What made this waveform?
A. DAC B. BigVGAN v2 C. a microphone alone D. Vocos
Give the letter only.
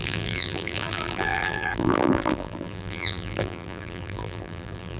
B